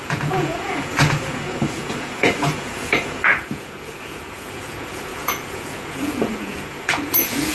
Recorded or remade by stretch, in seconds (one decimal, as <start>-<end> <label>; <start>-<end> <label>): 0.0-7.5 remade

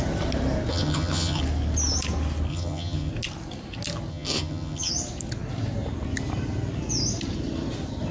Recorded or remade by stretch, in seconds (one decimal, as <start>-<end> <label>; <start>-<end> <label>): 0.0-0.7 recorded; 0.7-1.4 remade; 1.4-2.5 recorded; 2.5-3.1 remade; 3.1-4.1 recorded; 4.1-4.9 remade; 4.9-8.1 recorded

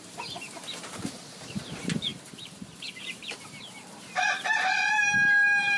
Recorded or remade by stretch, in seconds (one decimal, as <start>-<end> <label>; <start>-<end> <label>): 0.0-5.8 remade

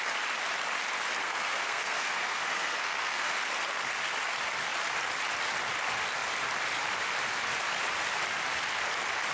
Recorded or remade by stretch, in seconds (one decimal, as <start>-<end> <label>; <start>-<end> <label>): 0.0-1.2 recorded; 1.2-3.3 remade; 3.3-9.3 recorded

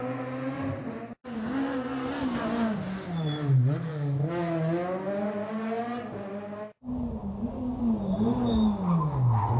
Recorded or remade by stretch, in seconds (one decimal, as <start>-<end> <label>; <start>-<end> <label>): 0.0-9.6 recorded

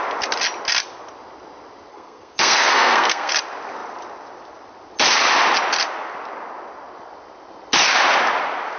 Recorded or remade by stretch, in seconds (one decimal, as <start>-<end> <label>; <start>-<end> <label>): 0.0-1.9 recorded; 1.9-3.3 remade; 3.3-8.8 recorded